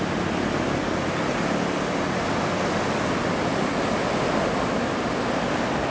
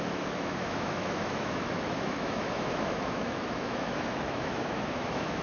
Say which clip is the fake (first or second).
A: second